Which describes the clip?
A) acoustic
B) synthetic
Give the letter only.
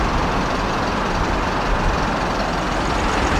A